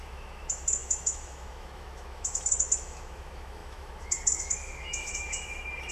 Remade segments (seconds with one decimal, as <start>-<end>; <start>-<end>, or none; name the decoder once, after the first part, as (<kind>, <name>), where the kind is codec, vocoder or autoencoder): 0.0-5.9 (autoencoder, DAC-VAE)